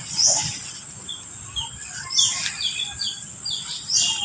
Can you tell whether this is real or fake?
real